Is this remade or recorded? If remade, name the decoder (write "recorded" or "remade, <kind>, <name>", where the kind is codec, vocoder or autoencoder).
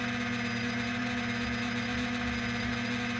recorded